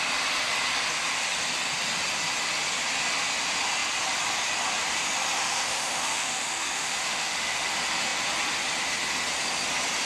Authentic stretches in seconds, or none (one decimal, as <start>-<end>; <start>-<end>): 0.0-5.4; 7.7-10.1